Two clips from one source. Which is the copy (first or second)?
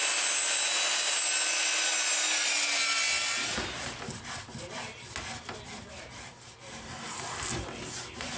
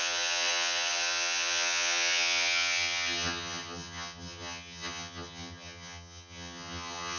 second